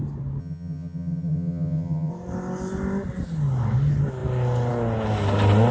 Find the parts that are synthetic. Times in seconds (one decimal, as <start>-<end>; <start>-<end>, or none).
0.4-2.1